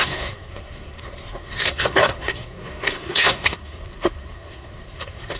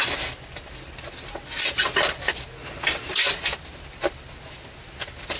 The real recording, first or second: second